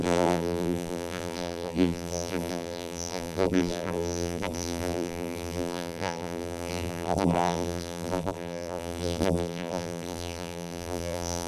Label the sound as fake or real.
fake